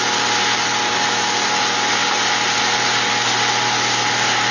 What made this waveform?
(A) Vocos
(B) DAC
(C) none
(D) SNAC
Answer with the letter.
C